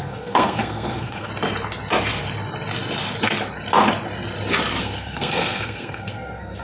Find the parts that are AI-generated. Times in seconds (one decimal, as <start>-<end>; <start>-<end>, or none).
0.0-1.3; 4.8-6.6